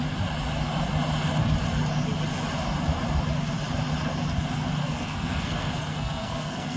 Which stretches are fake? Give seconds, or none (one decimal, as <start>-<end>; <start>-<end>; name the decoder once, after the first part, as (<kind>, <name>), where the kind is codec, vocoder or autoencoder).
4.8-6.8 (codec, SNAC)